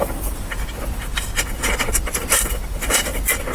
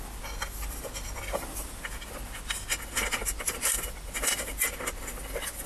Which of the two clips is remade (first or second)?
first